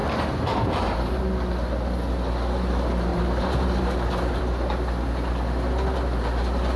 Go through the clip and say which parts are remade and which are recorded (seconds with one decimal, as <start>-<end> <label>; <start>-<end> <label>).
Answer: 0.0-1.2 remade; 1.2-3.1 recorded; 3.1-4.4 remade; 4.4-6.8 recorded